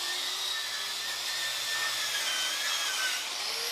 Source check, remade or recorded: recorded